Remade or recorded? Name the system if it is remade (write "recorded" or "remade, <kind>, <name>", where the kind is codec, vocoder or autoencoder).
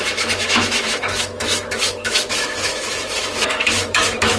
remade, autoencoder, DAC-VAE